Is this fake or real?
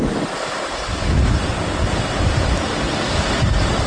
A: real